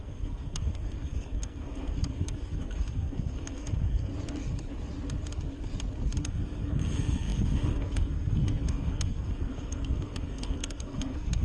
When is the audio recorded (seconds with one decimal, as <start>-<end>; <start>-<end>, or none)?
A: 4.1-6.2